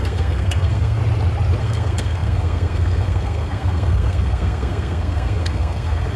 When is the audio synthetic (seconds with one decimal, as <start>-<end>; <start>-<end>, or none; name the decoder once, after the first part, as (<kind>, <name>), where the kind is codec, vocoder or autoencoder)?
0.0-1.0 (codec, SNAC); 1.6-6.2